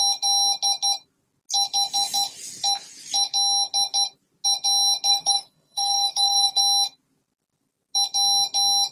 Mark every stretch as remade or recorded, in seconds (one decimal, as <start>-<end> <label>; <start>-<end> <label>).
0.0-5.1 recorded; 5.1-6.6 remade; 6.6-8.9 recorded